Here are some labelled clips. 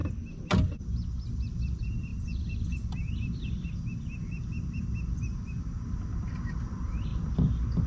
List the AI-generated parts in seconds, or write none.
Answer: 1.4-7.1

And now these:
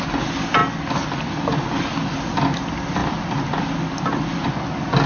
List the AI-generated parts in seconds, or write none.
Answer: 3.0-3.6

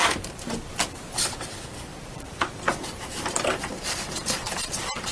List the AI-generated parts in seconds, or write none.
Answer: 0.0-0.7; 1.9-5.1

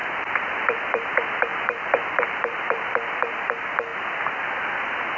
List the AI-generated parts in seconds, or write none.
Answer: 0.0-1.1; 1.5-2.9

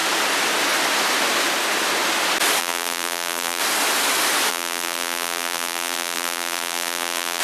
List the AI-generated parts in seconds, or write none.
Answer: 2.6-3.6; 4.5-7.4

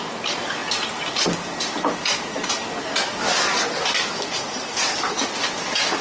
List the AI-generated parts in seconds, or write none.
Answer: none

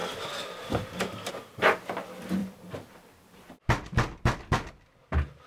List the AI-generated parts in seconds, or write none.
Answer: 2.4-4.7

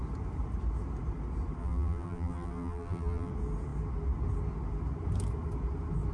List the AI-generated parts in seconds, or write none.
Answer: 1.6-3.3